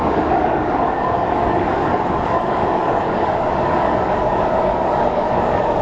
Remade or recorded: remade